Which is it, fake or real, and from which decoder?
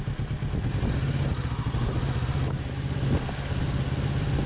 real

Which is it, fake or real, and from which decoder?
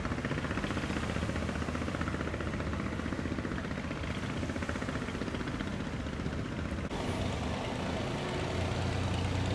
real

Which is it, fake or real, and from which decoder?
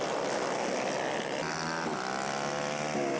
real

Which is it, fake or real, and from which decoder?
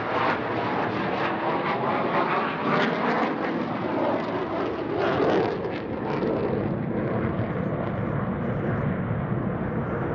real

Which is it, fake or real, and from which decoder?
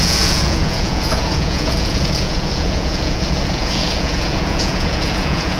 fake, vocoder, Vocos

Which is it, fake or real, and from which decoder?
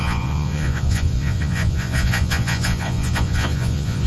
fake, vocoder, Vocos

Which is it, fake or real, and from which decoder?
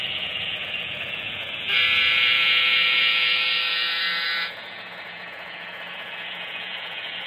fake, vocoder, Vocos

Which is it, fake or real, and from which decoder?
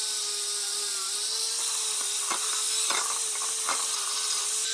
real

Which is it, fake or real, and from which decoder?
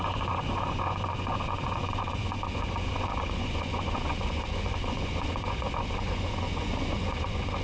fake, vocoder, Vocos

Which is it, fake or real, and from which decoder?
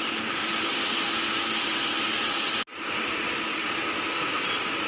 real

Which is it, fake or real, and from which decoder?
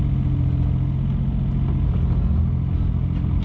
real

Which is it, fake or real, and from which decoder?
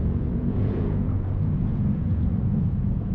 fake, vocoder, Vocos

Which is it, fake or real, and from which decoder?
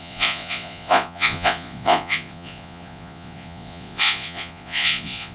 fake, vocoder, Vocos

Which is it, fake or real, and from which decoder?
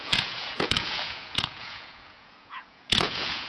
fake, vocoder, Vocos